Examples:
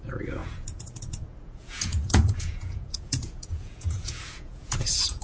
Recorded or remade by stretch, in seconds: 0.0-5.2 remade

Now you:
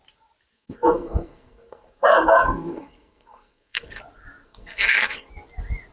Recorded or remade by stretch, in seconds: 0.0-0.5 recorded; 0.5-4.0 remade; 4.0-4.4 recorded; 4.4-5.3 remade; 5.3-5.9 recorded

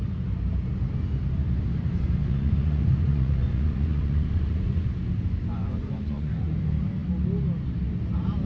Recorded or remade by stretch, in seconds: 0.0-2.2 recorded; 2.2-4.9 remade; 4.9-5.6 recorded; 5.6-6.3 remade; 6.3-8.5 recorded

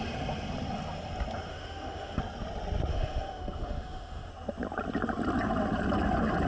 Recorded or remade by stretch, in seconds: 0.0-1.5 recorded; 1.5-2.2 remade; 2.2-2.9 recorded; 2.9-4.3 remade; 4.3-6.5 recorded

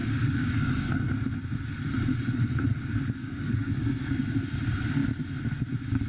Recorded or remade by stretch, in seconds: 0.0-1.1 remade; 1.1-3.2 recorded; 3.2-4.4 remade; 4.4-6.1 recorded

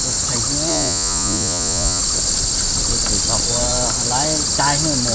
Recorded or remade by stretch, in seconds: 0.0-0.7 recorded; 0.7-2.0 remade; 2.0-5.1 recorded

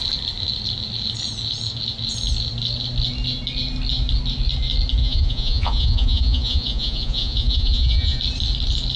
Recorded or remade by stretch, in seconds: 0.0-5.0 recorded; 5.0-8.2 remade; 8.2-9.0 recorded